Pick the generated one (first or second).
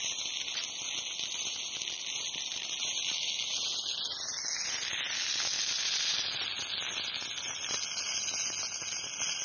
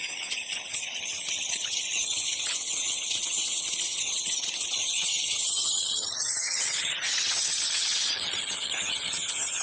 second